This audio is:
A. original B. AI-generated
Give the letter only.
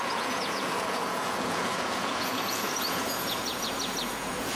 B